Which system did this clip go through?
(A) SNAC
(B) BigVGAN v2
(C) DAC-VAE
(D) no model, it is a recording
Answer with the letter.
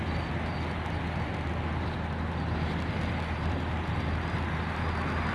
D